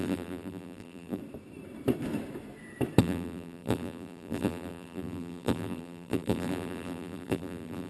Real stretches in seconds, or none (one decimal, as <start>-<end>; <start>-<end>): 1.2-3.0